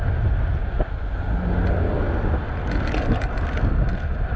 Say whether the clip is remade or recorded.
recorded